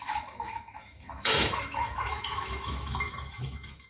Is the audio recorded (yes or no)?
no